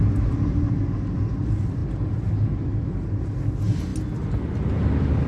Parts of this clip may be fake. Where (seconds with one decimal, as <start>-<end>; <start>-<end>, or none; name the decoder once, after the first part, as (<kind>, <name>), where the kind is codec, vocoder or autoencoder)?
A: none